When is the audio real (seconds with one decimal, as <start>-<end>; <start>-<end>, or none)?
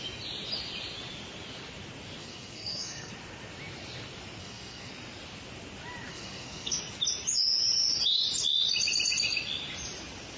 0.0-2.2; 3.1-4.4; 4.9-6.1; 6.8-10.4